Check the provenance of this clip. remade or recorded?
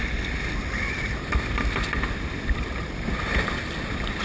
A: recorded